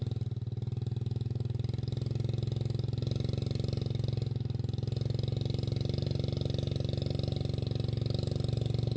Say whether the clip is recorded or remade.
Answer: recorded